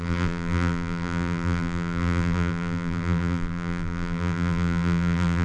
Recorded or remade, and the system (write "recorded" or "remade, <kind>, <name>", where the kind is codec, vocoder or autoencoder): remade, vocoder, BigVGAN v2